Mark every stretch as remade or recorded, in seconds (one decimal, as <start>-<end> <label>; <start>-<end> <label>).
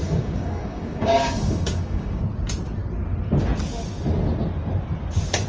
0.0-2.2 remade; 2.2-5.5 recorded